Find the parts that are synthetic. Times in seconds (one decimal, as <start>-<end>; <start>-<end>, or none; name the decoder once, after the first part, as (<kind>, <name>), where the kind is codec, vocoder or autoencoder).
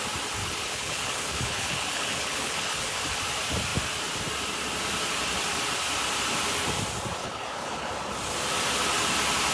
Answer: 0.4-3.0 (codec, HILCodec); 7.2-7.9